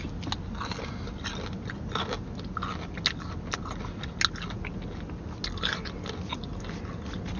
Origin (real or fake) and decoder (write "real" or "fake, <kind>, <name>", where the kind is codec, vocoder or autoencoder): real